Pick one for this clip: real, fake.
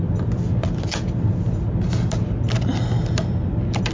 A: real